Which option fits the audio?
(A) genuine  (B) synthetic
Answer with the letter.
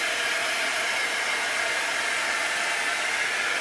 A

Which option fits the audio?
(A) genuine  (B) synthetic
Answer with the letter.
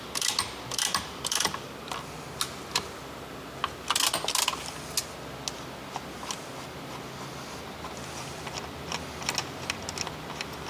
A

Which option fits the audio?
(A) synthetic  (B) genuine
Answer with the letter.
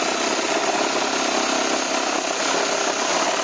B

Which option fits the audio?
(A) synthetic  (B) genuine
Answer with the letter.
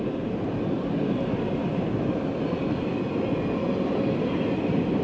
B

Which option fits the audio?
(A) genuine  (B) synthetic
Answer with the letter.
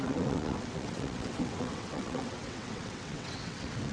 B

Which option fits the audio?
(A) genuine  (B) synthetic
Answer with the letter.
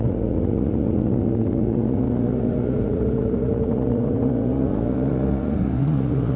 B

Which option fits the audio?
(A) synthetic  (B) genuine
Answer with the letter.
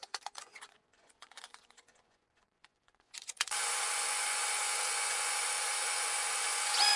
A